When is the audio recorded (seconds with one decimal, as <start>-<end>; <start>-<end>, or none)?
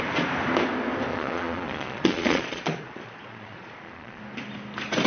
0.0-1.1; 4.2-5.1